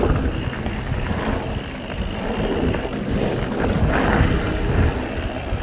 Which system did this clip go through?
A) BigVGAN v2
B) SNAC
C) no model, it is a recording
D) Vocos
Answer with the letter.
C